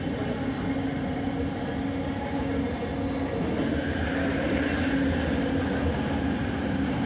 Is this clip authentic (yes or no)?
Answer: yes